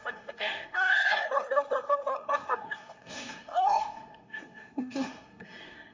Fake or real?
fake